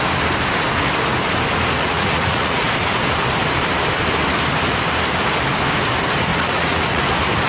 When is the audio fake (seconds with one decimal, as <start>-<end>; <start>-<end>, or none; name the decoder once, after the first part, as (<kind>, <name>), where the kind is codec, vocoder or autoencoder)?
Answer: 1.8-2.7 (vocoder, Vocos); 6.3-7.0